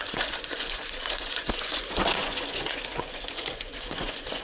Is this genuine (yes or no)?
no